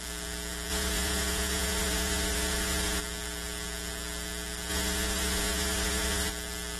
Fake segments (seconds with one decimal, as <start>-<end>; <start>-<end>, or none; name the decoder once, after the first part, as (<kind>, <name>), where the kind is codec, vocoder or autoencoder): 0.7-3.0 (vocoder, Vocos); 4.7-6.3